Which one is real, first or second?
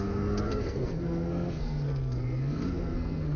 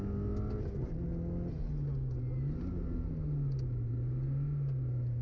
second